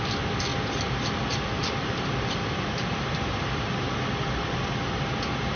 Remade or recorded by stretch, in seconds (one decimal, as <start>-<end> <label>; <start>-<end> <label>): 0.0-0.5 recorded; 0.5-3.9 remade; 3.9-5.6 recorded